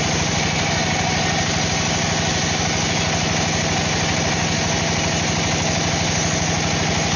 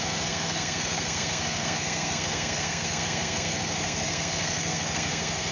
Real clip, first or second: first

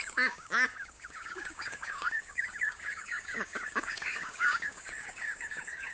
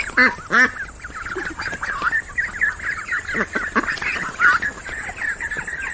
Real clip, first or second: second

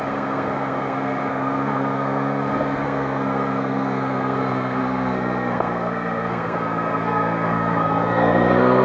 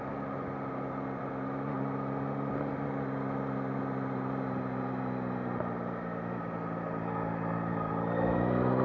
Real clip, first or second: second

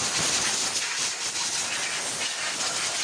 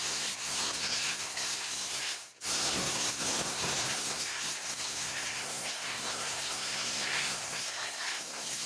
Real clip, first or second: first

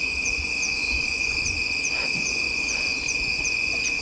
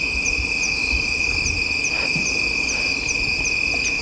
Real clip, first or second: second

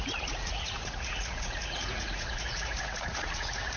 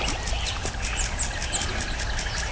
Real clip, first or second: second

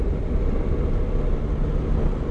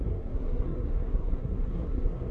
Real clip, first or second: first